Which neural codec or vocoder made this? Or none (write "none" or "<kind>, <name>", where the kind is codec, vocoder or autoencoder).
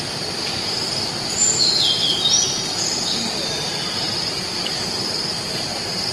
none